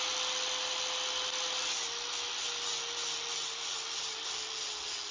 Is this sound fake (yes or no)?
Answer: no